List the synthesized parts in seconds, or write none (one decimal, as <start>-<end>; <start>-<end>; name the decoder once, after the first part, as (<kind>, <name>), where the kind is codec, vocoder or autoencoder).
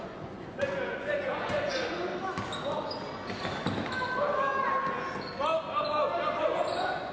0.0-2.1 (vocoder, Vocos); 6.4-7.1